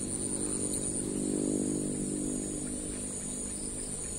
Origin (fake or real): real